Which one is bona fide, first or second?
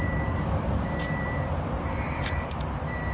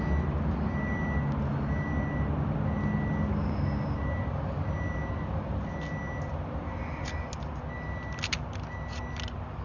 second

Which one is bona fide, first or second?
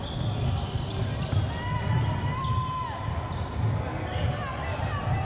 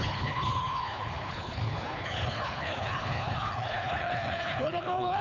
first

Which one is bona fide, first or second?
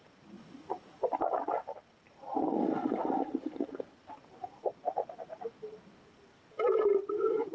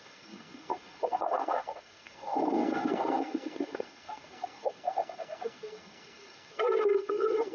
first